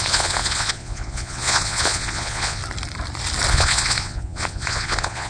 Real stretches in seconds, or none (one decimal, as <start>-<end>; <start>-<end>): 2.6-3.5